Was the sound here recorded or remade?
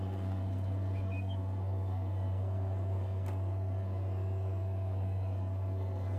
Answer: remade